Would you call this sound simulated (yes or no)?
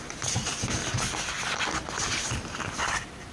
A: no